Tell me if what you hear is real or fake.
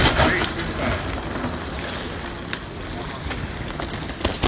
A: real